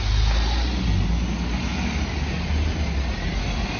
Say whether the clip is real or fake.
real